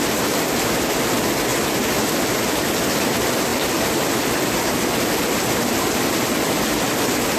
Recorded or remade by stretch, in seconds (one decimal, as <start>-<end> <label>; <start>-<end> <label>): 0.0-7.4 recorded